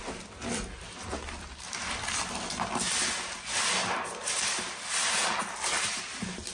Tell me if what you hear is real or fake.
real